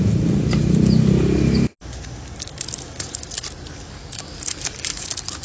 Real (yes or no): yes